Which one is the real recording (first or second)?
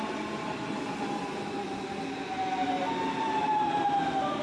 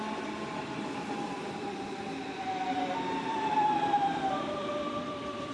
first